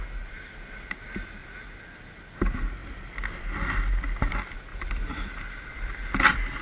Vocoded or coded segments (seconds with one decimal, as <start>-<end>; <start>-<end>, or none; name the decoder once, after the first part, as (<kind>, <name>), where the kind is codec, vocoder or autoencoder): 1.4-2.1 (vocoder, BigVGAN v2); 4.7-6.6